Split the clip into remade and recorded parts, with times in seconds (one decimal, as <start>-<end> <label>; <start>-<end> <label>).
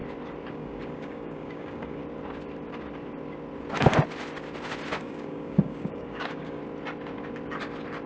0.0-0.5 recorded; 0.5-2.0 remade; 2.0-5.0 recorded; 5.0-6.6 remade; 6.6-8.1 recorded